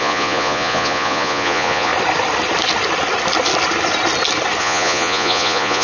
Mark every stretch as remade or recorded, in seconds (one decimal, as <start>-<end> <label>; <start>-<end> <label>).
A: 0.0-1.9 remade; 1.9-4.6 recorded; 4.6-5.8 remade